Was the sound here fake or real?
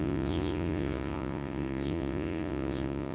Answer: fake